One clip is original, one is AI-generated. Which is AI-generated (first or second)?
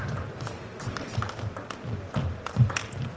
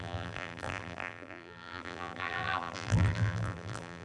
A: second